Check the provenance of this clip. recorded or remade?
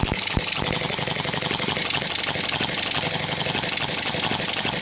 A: recorded